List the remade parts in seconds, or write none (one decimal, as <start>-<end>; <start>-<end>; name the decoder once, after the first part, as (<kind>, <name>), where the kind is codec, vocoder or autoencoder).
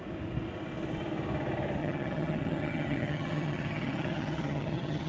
1.8-5.1 (vocoder, HiFi-GAN)